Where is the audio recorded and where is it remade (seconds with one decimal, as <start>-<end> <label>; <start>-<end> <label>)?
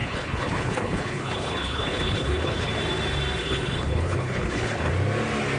0.0-2.7 remade; 2.7-3.4 recorded; 3.4-4.9 remade; 4.9-5.6 recorded